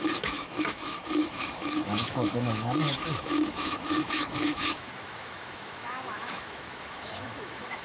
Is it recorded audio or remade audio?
remade